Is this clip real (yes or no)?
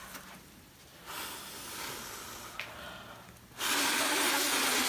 yes